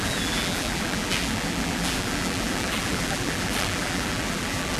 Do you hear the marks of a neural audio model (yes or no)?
yes